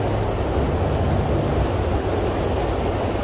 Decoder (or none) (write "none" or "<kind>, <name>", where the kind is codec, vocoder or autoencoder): none